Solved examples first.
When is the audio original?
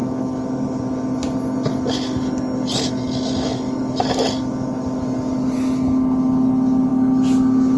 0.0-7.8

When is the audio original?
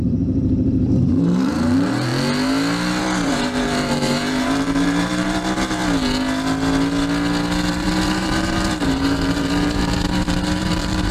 2.1-3.0; 5.8-7.7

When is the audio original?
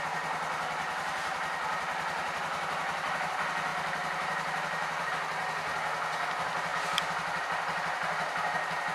0.0-3.7; 5.1-8.9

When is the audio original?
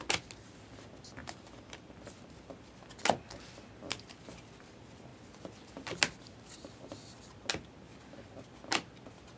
0.0-5.1; 6.9-7.9